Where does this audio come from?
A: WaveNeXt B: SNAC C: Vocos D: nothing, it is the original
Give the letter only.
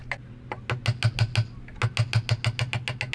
D